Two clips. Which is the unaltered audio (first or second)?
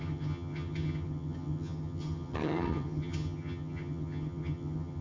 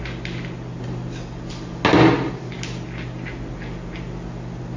second